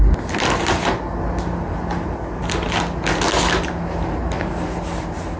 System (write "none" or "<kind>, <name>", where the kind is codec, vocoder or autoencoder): none